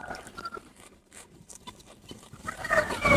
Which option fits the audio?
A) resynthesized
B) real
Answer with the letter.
A